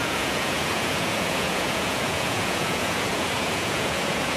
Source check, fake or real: fake